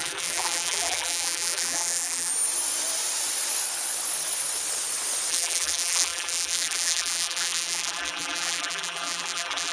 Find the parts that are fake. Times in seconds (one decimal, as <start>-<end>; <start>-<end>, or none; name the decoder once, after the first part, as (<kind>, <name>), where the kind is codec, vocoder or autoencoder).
0.0-2.3 (vocoder, BigVGAN v2); 5.3-9.7